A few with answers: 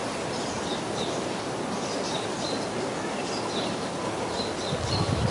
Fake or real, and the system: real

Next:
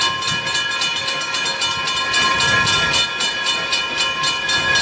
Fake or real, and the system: real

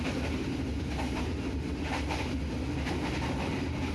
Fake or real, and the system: real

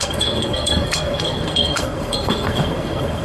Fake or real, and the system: fake, codec, SNAC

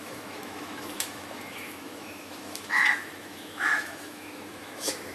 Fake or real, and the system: fake, autoencoder, DAC-VAE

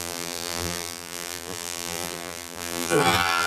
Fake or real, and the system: fake, vocoder, BigVGAN v2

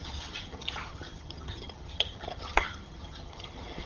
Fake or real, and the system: fake, vocoder, HiFi-GAN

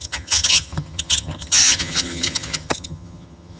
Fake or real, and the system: fake, vocoder, HiFi-GAN